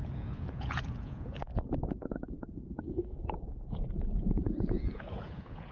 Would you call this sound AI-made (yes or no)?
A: yes